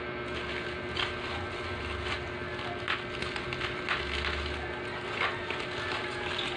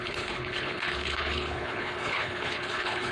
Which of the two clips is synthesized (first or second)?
second